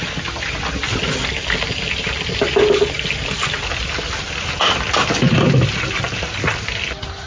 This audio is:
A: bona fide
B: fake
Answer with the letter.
A